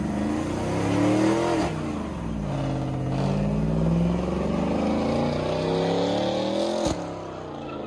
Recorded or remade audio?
recorded